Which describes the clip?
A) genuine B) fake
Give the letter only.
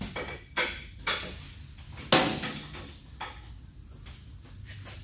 A